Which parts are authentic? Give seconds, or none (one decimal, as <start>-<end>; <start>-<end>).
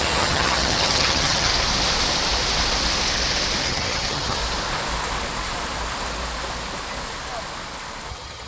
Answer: 1.5-3.6; 4.4-8.1